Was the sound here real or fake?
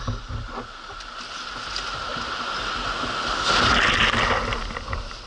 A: real